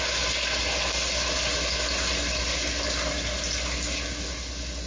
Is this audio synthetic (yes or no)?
no